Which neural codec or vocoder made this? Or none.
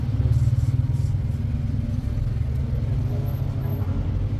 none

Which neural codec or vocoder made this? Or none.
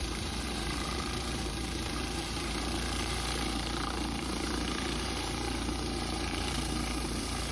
vocoder, BigVGAN v2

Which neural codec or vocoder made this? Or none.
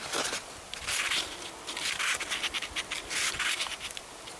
vocoder, BigVGAN v2